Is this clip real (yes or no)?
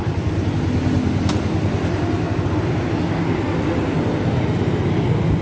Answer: yes